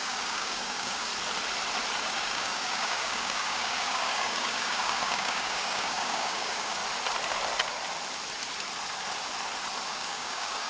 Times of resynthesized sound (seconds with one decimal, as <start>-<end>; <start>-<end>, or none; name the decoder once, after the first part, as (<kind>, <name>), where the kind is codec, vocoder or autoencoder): 0.0-1.1 (codec, DAC); 2.0-6.8; 9.9-10.7